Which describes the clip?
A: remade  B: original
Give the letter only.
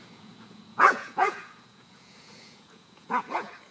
A